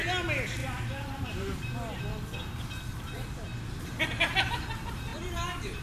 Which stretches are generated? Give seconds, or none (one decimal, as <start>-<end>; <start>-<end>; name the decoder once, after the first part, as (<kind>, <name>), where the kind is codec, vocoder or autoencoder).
0.6-2.0 (vocoder, BigVGAN v2); 3.5-4.5; 5.1-5.8